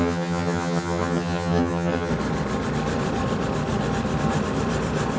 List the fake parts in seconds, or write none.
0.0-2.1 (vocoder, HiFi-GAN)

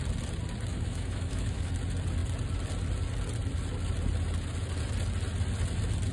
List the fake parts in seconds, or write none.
0.7-1.7 (autoencoder, DAC-VAE)

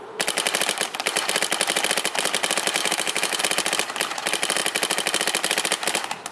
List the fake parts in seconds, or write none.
2.8-3.4 (autoencoder, DAC-VAE)

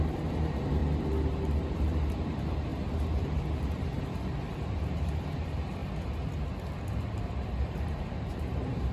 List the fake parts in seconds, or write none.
0.0-0.8 (vocoder, BigVGAN v2); 1.6-5.8; 7.0-8.9

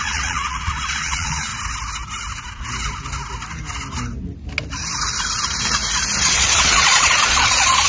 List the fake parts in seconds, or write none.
0.0-1.5 (vocoder, Vocos); 6.2-7.9

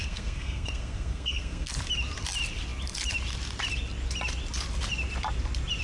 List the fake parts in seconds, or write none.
0.0-1.7 (codec, SNAC)

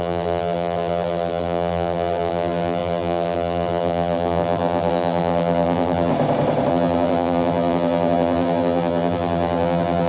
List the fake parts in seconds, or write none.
0.0-6.1 (vocoder, BigVGAN v2); 6.7-10.1

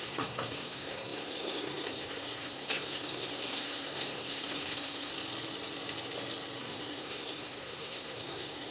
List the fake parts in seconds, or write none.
0.0-5.1 (codec, SNAC); 6.6-8.7